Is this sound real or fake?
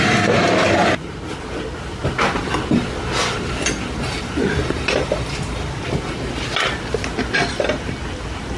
real